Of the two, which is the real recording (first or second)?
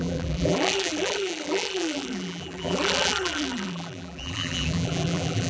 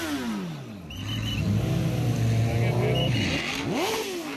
second